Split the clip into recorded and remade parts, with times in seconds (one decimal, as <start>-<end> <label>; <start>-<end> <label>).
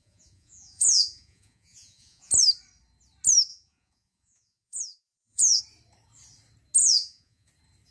0.0-2.3 remade; 2.3-3.5 recorded; 3.5-5.6 remade; 5.6-6.8 recorded; 6.8-7.5 remade; 7.5-7.9 recorded